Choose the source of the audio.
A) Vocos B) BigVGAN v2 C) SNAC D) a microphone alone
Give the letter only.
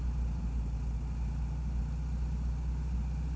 D